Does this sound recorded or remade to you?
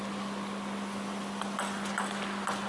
recorded